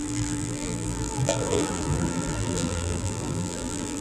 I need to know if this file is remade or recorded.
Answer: remade